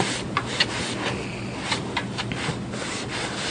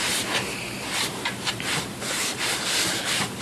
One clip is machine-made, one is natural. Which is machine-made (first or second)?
second